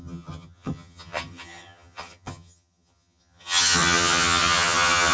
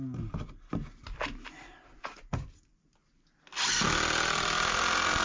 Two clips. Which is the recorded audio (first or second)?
second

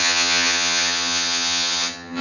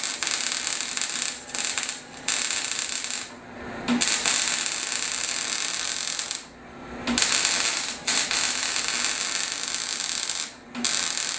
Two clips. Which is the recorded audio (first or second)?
second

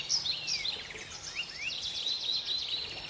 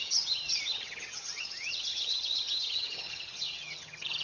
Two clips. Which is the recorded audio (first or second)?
first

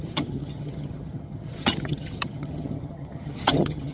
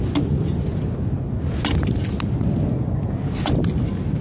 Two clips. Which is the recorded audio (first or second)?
second